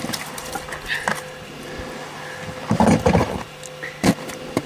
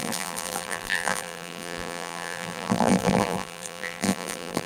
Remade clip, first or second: second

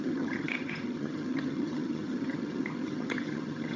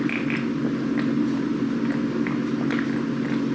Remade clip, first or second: first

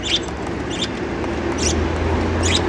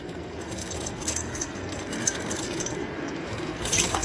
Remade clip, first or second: second